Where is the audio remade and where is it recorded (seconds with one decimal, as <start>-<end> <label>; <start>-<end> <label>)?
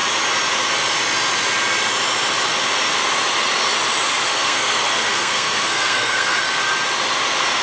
0.0-4.3 recorded; 4.3-6.4 remade; 6.4-7.6 recorded